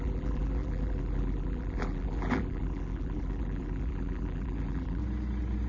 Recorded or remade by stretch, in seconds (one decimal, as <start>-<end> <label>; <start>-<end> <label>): 0.0-5.0 remade; 5.0-5.7 recorded